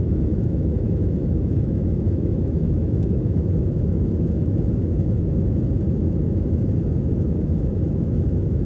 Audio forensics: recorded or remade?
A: remade